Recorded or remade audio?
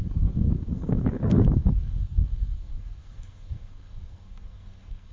remade